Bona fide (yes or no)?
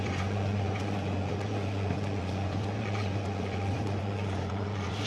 no